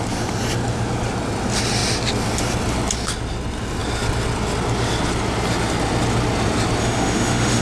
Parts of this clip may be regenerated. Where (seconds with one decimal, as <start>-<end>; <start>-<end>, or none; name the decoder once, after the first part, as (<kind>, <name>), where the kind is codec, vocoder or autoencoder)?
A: 6.8-7.6 (autoencoder, DAC-VAE)